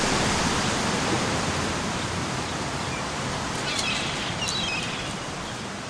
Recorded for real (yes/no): yes